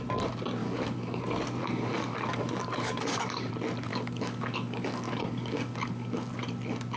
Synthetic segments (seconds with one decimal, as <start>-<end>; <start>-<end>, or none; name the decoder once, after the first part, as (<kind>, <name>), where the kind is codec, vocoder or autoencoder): 0.6-1.2 (codec, DAC); 1.6-3.5; 3.9-6.3